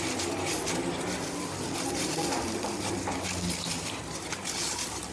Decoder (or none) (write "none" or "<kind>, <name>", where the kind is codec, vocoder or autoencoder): none